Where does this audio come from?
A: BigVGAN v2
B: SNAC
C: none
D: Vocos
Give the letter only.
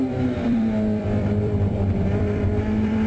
A